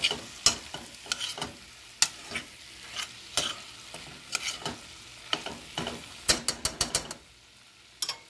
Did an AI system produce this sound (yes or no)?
no